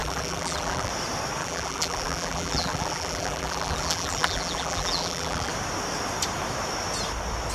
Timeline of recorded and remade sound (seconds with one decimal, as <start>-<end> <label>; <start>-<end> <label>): 0.0-0.9 remade; 0.9-1.4 recorded; 1.4-5.5 remade; 5.5-7.5 recorded